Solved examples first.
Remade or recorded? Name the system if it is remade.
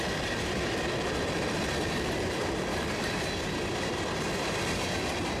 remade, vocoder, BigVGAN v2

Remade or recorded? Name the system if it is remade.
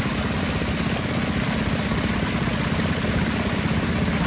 remade, vocoder, BigVGAN v2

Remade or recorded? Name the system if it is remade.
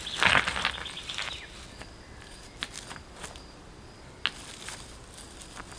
recorded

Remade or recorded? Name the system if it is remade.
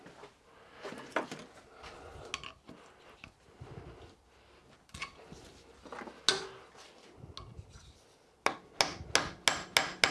recorded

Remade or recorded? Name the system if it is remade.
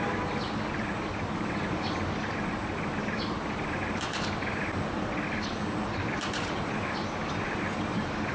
recorded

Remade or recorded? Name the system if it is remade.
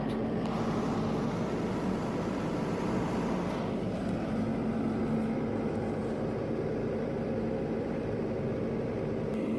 remade, vocoder, BigVGAN v2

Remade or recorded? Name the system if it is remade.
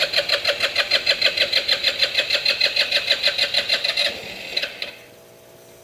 recorded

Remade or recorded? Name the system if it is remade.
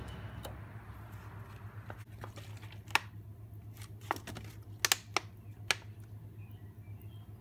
recorded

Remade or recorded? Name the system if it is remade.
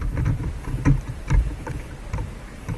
remade, vocoder, BigVGAN v2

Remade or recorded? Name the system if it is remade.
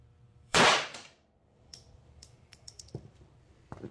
remade, vocoder, BigVGAN v2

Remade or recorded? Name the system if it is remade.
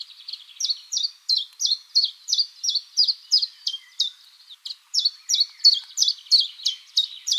recorded